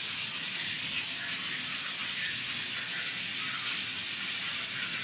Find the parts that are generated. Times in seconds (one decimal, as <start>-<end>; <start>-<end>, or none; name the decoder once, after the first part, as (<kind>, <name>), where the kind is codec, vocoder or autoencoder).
none